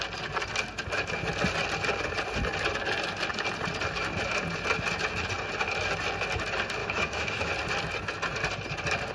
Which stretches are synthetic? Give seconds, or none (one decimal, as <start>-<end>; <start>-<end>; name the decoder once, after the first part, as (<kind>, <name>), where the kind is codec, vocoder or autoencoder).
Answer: 6.8-7.5 (autoencoder, DAC-VAE)